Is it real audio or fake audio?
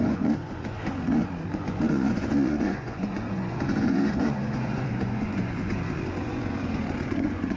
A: fake